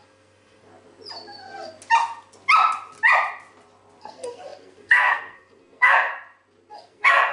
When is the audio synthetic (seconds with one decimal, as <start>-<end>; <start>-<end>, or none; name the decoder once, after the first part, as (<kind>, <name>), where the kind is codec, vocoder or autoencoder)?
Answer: 0.0-0.7 (codec, SNAC); 4.0-6.1; 6.7-7.3